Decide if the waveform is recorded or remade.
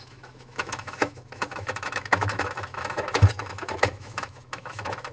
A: remade